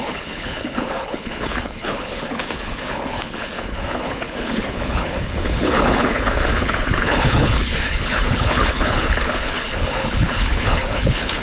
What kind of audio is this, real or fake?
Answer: fake